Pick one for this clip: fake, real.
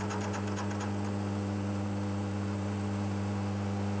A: real